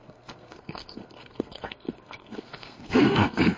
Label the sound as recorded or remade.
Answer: remade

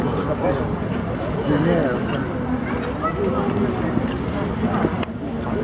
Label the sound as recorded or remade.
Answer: recorded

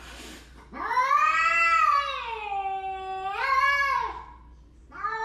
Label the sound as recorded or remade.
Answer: recorded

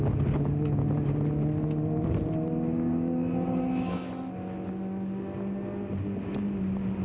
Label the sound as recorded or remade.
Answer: recorded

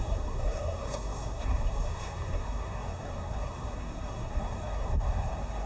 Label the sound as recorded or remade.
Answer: remade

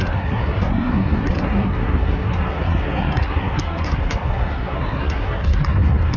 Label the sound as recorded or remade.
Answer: remade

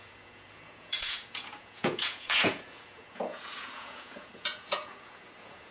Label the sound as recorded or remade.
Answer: remade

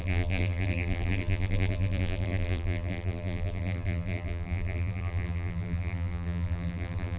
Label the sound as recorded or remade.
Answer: remade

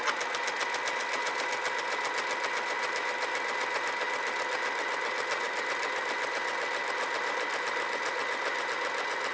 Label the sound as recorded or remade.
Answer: recorded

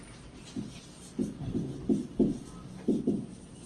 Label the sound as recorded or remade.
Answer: remade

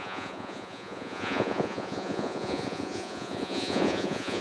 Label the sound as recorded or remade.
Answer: remade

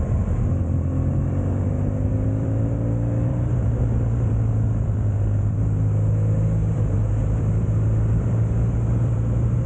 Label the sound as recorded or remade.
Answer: remade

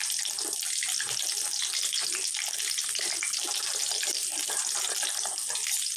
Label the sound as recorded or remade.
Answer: recorded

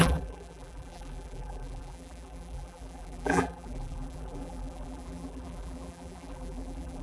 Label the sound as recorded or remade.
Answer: remade